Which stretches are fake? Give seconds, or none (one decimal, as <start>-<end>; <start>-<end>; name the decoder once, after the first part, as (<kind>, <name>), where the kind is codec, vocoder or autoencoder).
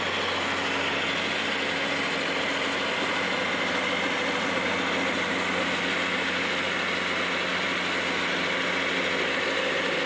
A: none